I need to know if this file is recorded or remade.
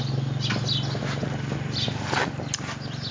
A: recorded